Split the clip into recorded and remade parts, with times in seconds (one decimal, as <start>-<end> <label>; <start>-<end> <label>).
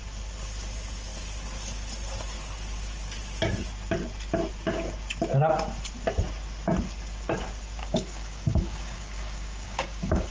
0.0-7.8 recorded; 7.8-10.3 remade